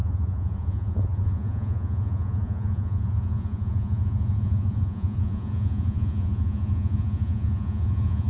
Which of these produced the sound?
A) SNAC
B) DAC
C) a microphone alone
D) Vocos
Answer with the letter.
D